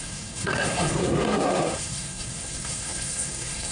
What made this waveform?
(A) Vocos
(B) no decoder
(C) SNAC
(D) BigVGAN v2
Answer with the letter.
C